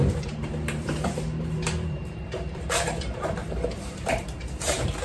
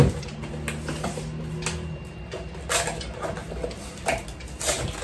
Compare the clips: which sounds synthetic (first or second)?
first